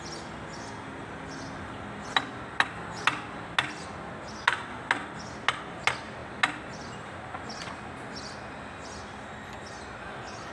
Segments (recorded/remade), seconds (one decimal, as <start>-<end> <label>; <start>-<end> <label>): 0.0-10.5 recorded